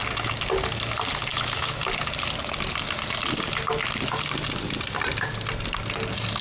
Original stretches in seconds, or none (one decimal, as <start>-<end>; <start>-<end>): 0.0-1.3; 1.8-6.4